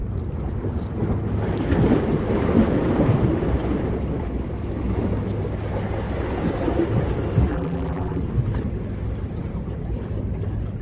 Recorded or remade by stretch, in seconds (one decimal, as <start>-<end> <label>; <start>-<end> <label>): 0.0-7.5 recorded; 7.5-8.2 remade; 8.2-10.8 recorded